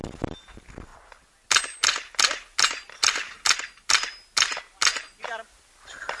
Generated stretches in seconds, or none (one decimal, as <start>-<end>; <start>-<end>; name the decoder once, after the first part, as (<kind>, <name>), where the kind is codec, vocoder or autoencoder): none